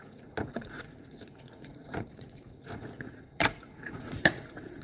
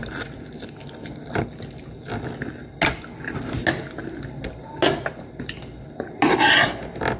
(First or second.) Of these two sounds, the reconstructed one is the first